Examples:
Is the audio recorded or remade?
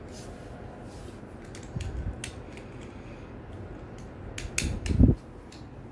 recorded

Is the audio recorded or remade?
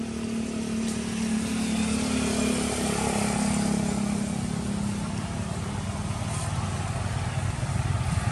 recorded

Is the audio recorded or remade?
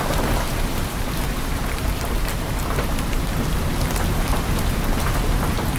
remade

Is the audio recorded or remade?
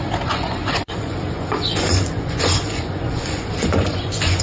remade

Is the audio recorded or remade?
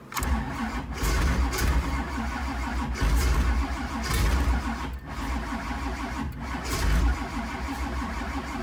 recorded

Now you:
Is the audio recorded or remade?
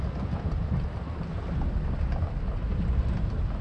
recorded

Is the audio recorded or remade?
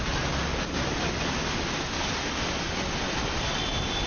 recorded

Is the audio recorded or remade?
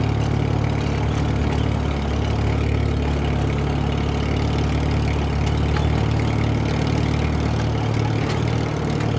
recorded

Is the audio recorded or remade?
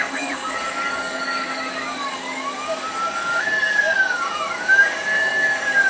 remade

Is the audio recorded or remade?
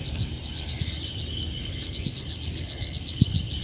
recorded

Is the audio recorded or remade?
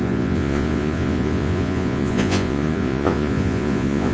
remade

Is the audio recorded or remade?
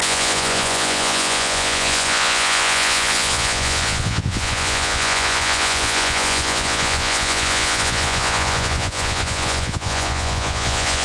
remade